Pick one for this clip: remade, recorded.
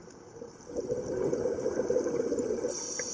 recorded